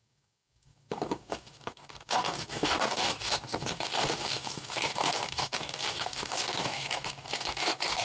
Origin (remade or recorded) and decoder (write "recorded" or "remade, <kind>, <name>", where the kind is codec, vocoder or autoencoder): remade, codec, DAC